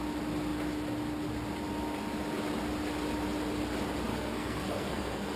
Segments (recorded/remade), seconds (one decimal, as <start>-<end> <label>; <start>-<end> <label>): 0.0-4.1 recorded; 4.1-5.4 remade